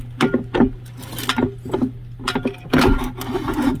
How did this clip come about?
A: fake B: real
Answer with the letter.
B